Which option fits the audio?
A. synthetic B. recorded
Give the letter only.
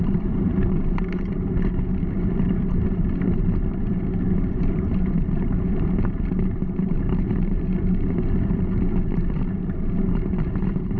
A